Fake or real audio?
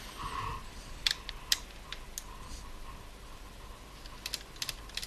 real